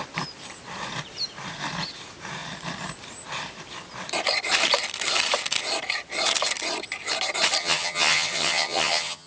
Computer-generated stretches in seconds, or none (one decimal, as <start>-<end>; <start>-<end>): 7.6-9.3